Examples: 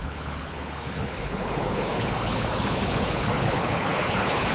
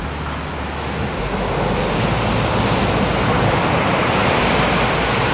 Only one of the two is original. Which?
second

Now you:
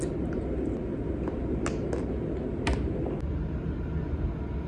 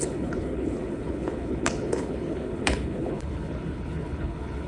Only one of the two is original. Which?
first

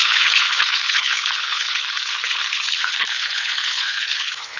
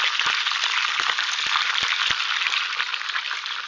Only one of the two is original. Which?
second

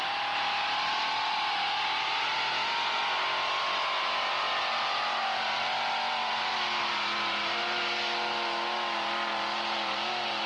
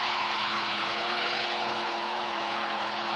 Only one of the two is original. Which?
first